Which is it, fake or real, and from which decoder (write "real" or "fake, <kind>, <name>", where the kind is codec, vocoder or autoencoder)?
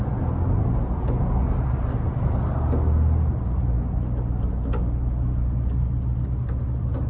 real